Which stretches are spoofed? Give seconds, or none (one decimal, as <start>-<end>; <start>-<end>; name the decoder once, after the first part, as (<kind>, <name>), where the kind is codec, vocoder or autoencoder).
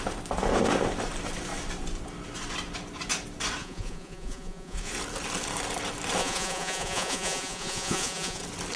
3.6-4.9 (vocoder, Vocos); 6.2-8.4